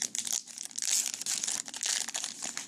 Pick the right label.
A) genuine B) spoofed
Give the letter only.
A